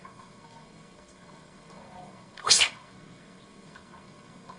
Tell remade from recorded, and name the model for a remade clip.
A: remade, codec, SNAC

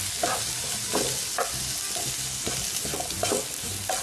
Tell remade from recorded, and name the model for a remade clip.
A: recorded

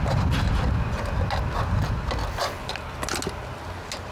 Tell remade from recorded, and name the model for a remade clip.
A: recorded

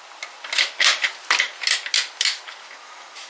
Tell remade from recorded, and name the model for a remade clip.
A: recorded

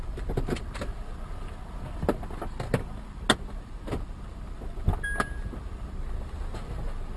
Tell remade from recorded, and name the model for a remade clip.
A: recorded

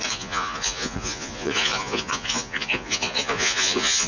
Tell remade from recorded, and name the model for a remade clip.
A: remade, vocoder, Vocos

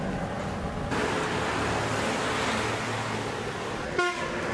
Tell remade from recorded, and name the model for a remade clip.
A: recorded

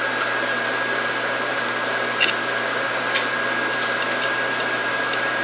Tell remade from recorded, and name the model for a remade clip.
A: recorded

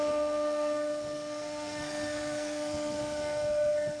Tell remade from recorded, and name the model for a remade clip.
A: remade, codec, SNAC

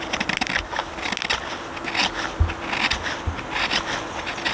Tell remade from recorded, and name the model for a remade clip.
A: recorded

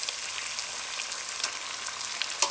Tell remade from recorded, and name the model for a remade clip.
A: recorded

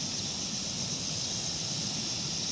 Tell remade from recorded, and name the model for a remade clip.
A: recorded